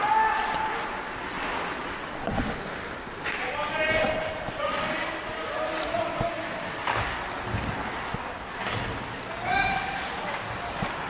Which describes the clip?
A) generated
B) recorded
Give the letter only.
B